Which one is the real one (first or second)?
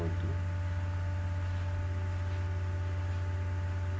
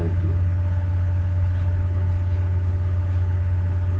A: first